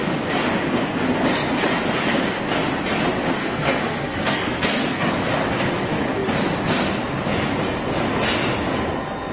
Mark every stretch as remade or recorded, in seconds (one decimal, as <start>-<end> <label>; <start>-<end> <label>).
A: 0.0-3.4 recorded; 3.4-5.1 remade; 5.1-9.3 recorded